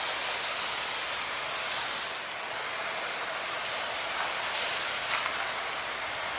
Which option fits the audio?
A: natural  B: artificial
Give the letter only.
A